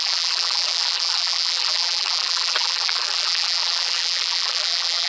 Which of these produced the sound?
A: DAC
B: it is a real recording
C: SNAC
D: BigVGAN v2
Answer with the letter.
D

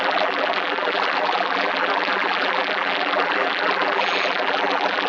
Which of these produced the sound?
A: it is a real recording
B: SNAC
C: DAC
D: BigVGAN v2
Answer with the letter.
D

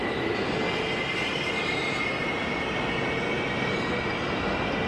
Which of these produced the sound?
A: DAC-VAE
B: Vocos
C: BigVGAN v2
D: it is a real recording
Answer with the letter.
D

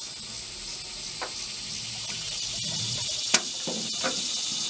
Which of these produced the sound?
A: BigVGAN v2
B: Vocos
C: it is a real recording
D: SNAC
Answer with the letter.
C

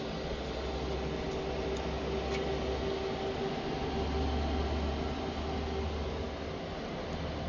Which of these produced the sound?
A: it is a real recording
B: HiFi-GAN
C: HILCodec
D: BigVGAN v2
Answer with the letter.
A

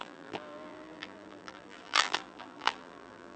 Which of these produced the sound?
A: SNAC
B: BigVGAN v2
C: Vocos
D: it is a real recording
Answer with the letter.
B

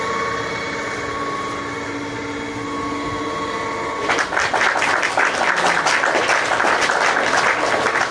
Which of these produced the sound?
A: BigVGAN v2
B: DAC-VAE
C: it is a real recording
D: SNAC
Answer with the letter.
C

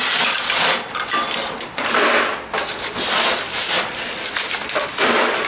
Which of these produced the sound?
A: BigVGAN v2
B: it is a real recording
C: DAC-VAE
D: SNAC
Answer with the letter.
B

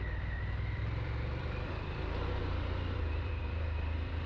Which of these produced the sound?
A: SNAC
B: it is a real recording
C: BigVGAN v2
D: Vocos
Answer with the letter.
C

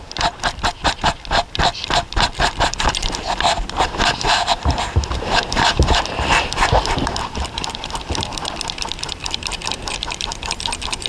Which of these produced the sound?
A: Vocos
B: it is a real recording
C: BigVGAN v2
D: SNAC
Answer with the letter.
C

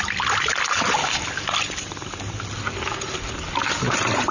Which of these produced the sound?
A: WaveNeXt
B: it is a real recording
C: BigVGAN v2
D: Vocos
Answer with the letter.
B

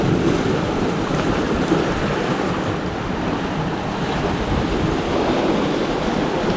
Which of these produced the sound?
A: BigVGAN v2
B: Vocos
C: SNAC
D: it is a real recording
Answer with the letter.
A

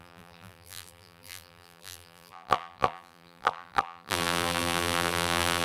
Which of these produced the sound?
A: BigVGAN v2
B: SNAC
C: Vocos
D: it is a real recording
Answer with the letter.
A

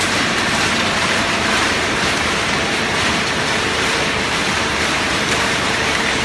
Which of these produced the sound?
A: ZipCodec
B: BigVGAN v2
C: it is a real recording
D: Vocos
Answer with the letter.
B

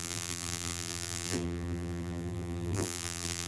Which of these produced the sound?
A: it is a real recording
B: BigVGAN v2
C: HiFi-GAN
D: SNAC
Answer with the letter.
B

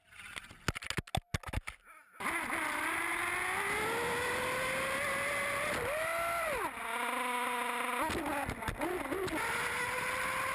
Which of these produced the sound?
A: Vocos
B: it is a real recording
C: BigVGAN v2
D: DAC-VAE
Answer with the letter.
B